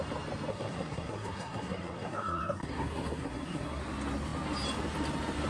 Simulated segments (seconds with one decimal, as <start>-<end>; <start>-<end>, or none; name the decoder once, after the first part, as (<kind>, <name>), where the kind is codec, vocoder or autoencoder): 0.5-3.8 (codec, SNAC)